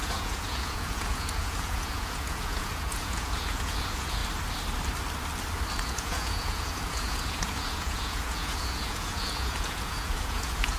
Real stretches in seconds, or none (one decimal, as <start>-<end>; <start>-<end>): 4.2-5.7